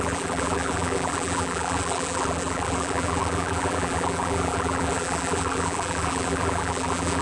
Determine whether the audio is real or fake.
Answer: fake